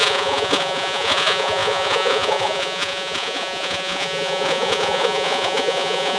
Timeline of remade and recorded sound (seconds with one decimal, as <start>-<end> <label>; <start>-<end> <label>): 0.0-6.2 remade

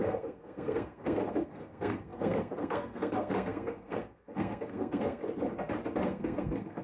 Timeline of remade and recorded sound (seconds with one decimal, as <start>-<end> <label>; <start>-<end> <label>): 0.0-5.2 remade; 5.2-6.0 recorded; 6.0-6.8 remade

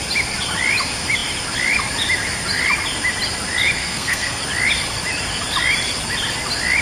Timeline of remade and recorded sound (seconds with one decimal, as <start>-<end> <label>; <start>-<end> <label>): 0.0-3.8 recorded; 3.8-4.4 remade; 4.4-6.8 recorded

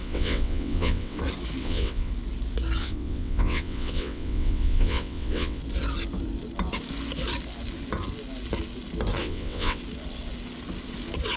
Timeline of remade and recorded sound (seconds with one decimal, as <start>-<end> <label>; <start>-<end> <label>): 0.0-1.2 remade; 1.2-1.6 recorded; 1.6-2.1 remade; 2.1-2.8 recorded; 2.8-5.6 remade; 5.6-9.2 recorded; 9.2-9.8 remade; 9.8-11.4 recorded

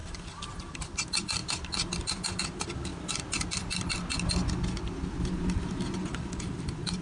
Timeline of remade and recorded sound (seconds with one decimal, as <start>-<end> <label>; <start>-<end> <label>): 0.0-1.4 remade; 1.4-2.4 recorded; 2.4-2.9 remade; 2.9-6.0 recorded; 6.0-7.0 remade

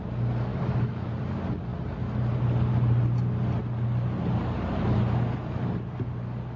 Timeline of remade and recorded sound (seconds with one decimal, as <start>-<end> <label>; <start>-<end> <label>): 0.0-0.5 recorded; 0.5-1.1 remade; 1.1-6.6 recorded

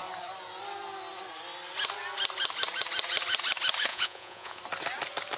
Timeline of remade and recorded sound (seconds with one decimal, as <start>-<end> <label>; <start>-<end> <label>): 0.0-3.9 recorded; 3.9-4.6 remade; 4.6-5.4 recorded

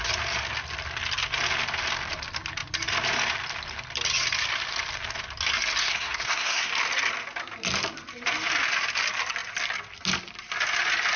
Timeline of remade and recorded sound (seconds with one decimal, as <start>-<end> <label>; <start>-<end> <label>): 0.0-5.8 recorded; 5.8-6.7 remade; 6.7-11.2 recorded